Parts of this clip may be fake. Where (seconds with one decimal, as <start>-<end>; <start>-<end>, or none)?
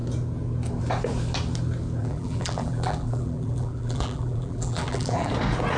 2.0-5.3